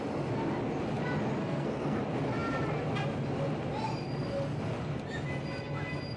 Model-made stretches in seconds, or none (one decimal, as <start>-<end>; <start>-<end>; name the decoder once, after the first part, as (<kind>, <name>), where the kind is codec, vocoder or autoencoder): 1.4-2.0 (codec, SNAC)

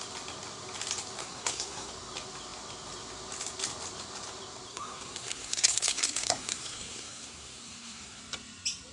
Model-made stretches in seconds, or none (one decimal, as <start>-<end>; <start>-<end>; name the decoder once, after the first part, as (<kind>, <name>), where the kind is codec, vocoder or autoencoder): 1.2-1.9 (codec, SNAC); 4.7-8.2